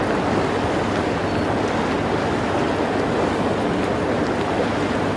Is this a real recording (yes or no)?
yes